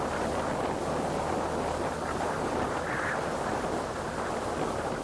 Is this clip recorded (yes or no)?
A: yes